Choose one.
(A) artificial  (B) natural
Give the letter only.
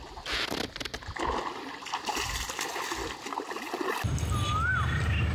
B